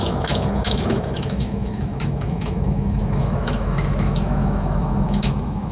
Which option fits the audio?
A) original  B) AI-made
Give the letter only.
B